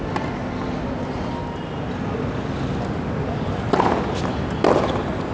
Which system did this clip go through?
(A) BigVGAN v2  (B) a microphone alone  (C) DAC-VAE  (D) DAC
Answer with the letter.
B